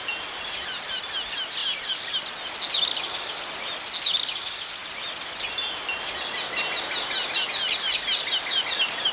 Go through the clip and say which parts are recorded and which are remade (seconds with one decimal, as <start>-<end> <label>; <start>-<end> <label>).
0.0-9.1 recorded